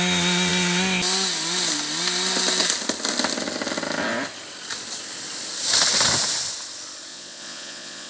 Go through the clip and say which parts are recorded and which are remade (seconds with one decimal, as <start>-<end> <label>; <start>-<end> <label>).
0.0-7.1 recorded; 7.1-8.1 remade